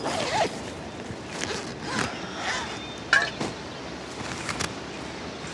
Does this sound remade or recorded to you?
recorded